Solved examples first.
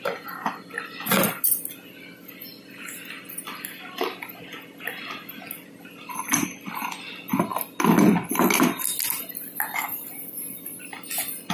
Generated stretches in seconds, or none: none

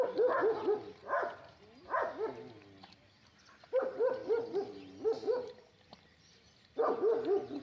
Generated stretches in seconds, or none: none

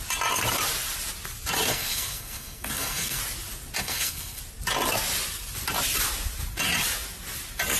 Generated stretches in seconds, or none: 1.7-3.2 (codec, SNAC); 3.8-4.4

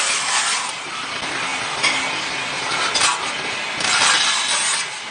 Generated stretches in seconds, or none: none

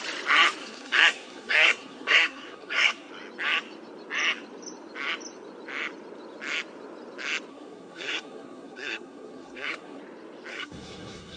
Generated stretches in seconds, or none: 0.6-3.1 (codec, SNAC); 7.5-10.0; 10.5-11.4

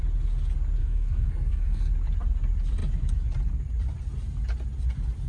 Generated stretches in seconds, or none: 0.8-1.9 (codec, SNAC)